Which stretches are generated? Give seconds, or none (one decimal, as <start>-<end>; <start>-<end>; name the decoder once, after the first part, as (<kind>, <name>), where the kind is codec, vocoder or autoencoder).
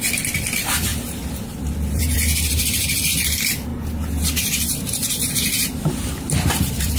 0.0-3.7 (vocoder, BigVGAN v2); 4.8-7.0